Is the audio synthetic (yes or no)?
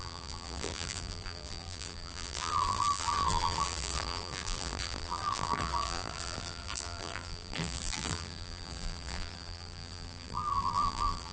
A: yes